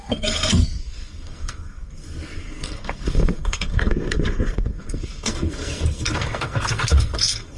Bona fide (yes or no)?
no